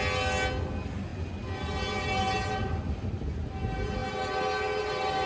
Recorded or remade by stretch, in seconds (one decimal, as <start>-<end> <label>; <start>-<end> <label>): 0.0-5.3 recorded